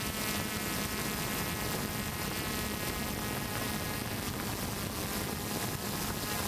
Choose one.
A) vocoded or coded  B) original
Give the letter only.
B